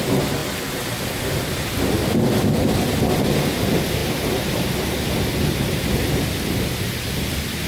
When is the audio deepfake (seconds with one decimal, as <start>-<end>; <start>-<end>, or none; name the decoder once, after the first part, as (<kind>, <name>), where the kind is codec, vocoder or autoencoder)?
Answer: none